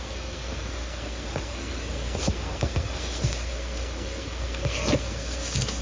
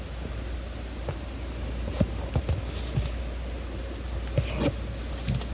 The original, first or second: second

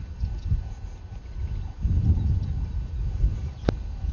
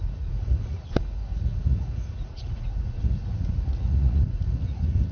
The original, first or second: first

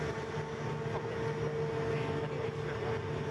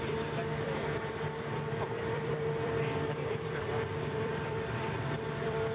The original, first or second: first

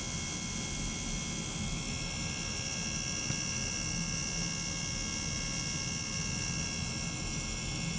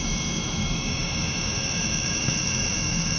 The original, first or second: first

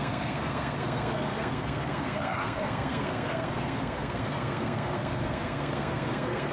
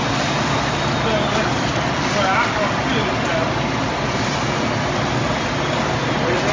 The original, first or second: second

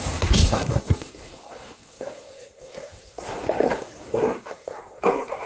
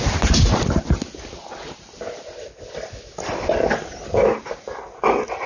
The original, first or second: second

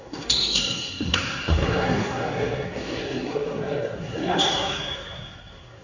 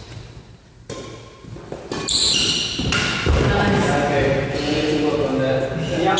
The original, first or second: second